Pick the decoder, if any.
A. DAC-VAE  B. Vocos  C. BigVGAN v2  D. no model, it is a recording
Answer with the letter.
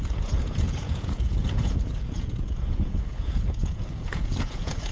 B